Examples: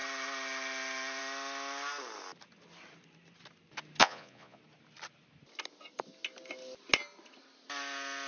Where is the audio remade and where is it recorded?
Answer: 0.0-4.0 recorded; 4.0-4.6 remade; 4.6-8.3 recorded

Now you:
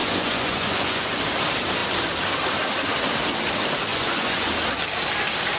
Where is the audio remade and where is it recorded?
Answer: 0.0-1.2 remade; 1.2-3.9 recorded; 3.9-4.5 remade; 4.5-5.6 recorded

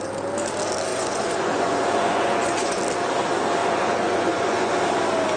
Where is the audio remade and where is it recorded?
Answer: 0.0-0.9 recorded; 0.9-2.8 remade; 2.8-3.6 recorded; 3.6-4.7 remade; 4.7-5.4 recorded

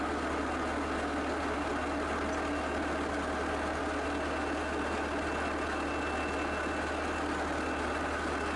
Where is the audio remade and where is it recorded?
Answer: 0.0-8.6 recorded

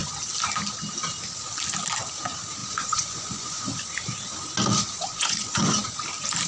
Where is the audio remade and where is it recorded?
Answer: 0.0-2.6 recorded; 2.6-3.8 remade; 3.8-5.0 recorded; 5.0-5.8 remade; 5.8-6.5 recorded

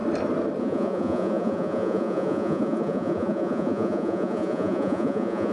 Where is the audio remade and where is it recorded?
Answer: 0.0-0.6 recorded; 0.6-5.5 remade

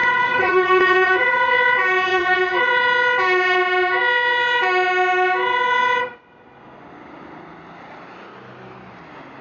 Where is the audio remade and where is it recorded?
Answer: 0.0-1.5 remade; 1.5-2.1 recorded; 2.1-2.7 remade; 2.7-9.4 recorded